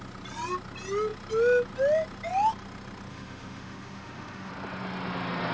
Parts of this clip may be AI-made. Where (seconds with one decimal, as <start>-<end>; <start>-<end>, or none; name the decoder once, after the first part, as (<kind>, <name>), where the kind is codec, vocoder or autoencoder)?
3.1-4.5 (autoencoder, DAC-VAE)

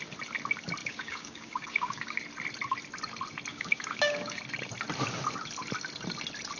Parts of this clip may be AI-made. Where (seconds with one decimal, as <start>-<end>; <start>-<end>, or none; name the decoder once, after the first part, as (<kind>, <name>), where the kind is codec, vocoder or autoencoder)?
0.8-2.2 (codec, DAC); 3.5-4.4